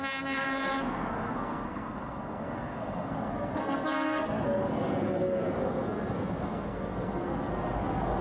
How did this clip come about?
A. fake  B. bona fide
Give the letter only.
A